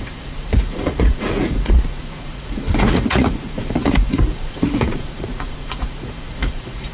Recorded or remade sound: remade